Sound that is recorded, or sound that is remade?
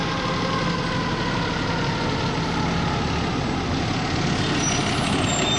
recorded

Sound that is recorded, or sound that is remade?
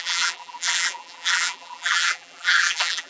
remade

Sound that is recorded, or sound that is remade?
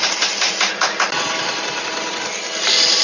remade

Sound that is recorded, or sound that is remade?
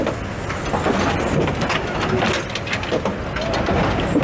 recorded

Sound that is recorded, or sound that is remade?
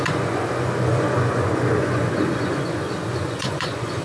remade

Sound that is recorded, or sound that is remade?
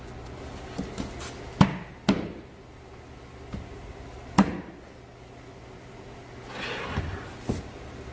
recorded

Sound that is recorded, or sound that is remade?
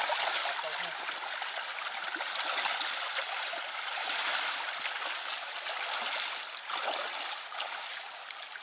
recorded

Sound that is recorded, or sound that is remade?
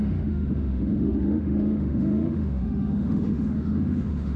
remade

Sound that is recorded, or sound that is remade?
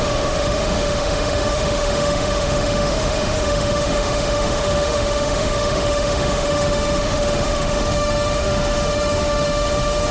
remade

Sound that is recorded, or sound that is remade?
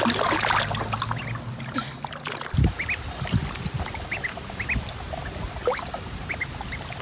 recorded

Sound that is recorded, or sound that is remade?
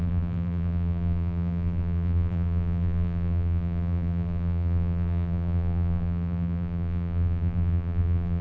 remade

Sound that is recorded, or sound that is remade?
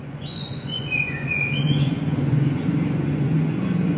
remade